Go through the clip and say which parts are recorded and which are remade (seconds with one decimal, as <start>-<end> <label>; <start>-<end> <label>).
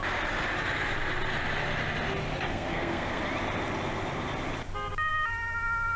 0.0-2.5 recorded; 2.5-3.2 remade; 3.2-6.0 recorded